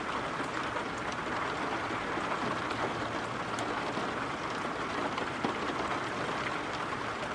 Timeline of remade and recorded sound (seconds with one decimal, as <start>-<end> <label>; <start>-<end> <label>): 0.0-7.3 recorded